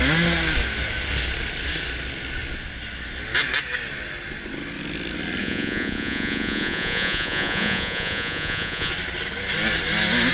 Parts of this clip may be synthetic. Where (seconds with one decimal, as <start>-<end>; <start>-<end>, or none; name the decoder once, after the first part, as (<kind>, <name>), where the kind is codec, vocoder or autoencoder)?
5.4-8.9 (vocoder, Vocos)